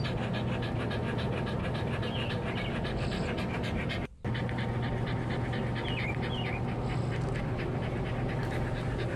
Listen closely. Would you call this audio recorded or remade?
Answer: recorded